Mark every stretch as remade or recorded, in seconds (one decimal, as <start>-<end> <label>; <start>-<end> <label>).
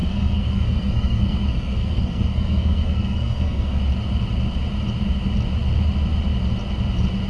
0.0-3.8 remade; 3.8-7.3 recorded